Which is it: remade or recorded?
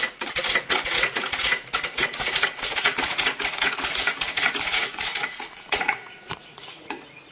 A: remade